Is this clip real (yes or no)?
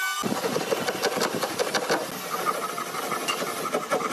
yes